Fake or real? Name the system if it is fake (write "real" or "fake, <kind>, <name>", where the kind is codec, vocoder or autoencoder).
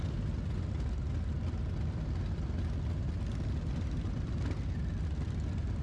real